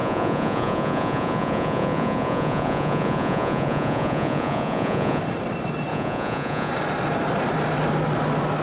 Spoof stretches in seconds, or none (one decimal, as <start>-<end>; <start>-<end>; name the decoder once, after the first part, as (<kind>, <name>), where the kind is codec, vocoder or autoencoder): 0.0-5.2 (vocoder, Vocos); 5.9-6.7